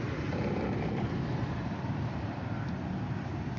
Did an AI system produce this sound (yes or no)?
no